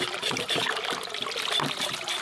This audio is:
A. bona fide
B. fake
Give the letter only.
A